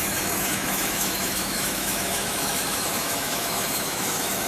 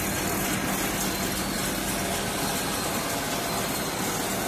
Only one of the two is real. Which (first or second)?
second